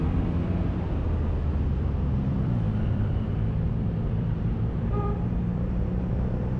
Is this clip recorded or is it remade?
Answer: remade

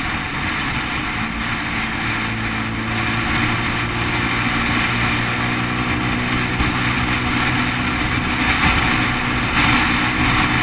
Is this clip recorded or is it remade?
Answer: recorded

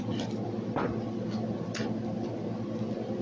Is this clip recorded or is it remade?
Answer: recorded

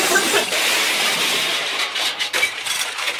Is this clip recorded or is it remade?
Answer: remade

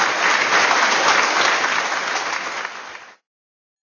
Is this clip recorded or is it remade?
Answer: recorded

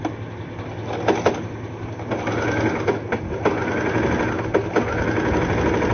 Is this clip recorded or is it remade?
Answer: recorded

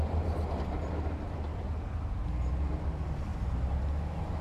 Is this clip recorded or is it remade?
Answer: recorded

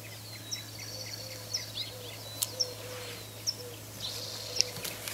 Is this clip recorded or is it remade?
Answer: recorded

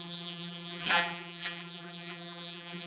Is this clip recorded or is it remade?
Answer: remade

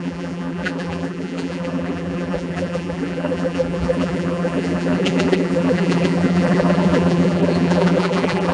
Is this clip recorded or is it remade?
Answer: remade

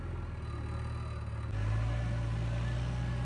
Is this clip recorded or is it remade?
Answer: recorded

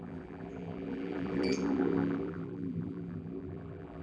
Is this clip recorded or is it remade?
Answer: remade